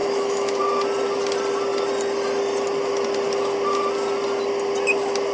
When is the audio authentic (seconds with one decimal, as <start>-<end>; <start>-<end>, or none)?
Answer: 0.6-5.3